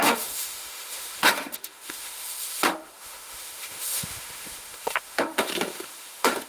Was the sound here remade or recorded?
remade